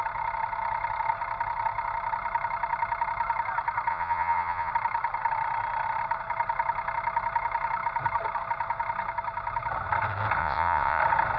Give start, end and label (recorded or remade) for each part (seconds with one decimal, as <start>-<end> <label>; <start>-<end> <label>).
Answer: 0.0-3.9 recorded; 3.9-4.7 remade; 4.7-10.4 recorded; 10.4-11.0 remade; 11.0-11.4 recorded